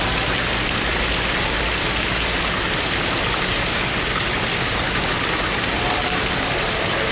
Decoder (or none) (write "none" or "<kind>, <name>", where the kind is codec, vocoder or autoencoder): none